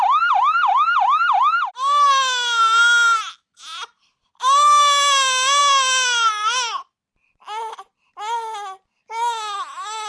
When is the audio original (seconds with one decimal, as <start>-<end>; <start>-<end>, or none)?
0.0-10.1